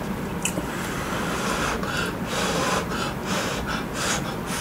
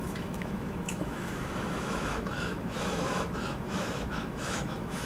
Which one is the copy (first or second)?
second